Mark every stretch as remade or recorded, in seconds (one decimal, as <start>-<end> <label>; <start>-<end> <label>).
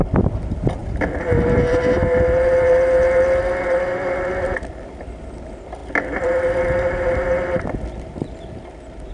0.0-9.1 recorded